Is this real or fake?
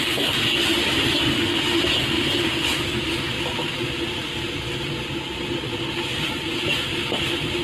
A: real